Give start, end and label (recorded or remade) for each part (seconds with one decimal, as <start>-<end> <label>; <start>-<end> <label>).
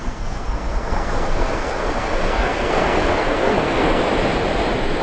0.0-4.0 remade; 4.0-5.0 recorded